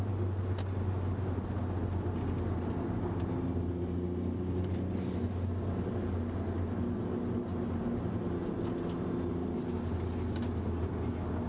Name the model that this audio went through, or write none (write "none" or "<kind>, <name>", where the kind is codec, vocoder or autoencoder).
none